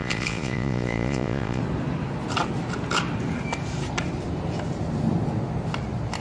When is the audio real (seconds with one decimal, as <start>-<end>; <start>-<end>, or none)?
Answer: 1.6-6.2